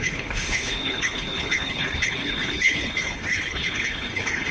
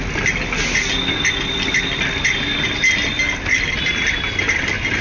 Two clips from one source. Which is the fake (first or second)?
first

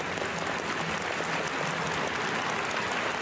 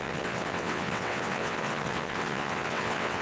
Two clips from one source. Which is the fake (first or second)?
second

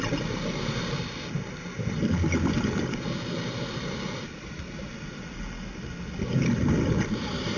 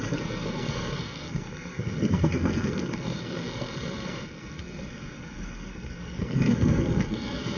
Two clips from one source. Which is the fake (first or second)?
second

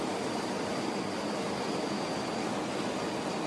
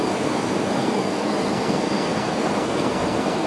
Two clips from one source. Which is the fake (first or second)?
second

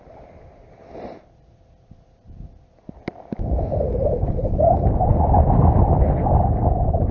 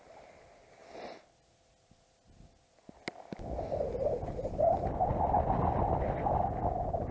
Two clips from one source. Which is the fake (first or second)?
first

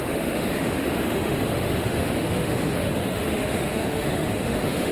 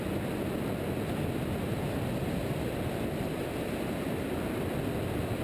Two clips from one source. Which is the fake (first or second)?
first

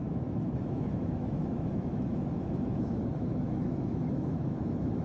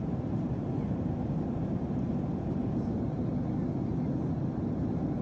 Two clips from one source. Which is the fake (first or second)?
first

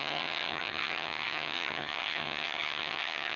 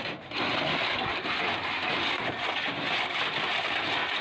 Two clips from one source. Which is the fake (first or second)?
first